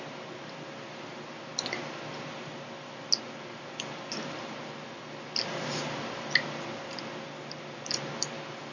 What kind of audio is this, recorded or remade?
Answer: recorded